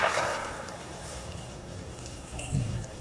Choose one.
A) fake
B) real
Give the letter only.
A